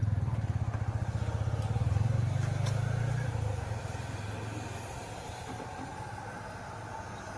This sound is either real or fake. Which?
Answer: real